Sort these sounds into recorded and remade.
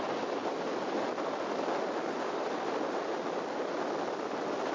recorded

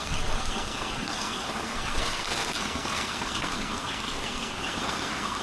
remade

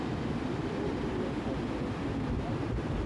recorded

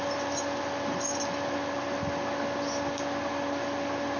recorded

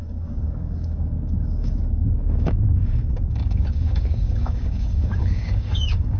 remade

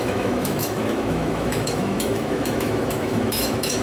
remade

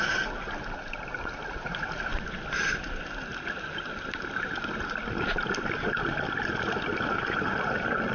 recorded